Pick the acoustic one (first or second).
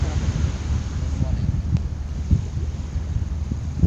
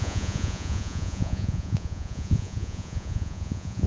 first